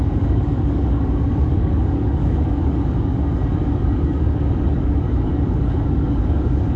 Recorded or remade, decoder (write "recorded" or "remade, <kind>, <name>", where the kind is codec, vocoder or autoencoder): remade, codec, DAC